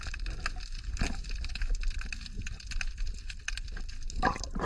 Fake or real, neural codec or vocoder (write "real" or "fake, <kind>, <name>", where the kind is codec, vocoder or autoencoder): real